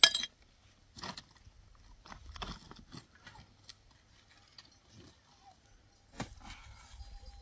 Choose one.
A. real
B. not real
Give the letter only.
A